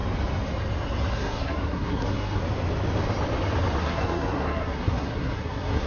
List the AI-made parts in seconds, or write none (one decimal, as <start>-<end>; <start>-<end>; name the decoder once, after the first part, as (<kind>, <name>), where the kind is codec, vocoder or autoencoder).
1.1-2.4 (codec, SNAC); 3.8-5.9